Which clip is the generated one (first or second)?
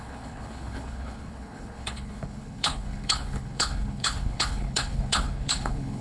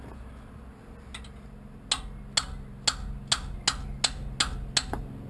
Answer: first